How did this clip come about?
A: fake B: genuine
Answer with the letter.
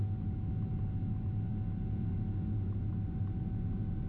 B